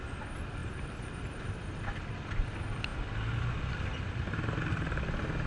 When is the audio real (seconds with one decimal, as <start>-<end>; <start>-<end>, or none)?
0.0-5.5